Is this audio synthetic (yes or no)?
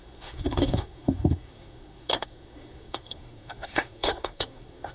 yes